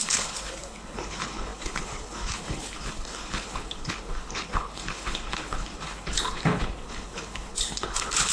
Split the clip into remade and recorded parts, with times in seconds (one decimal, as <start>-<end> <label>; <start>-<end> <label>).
0.0-8.3 remade